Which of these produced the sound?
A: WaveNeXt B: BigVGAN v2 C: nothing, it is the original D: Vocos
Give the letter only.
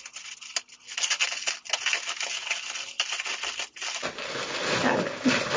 C